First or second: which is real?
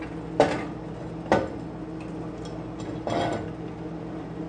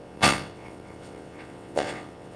first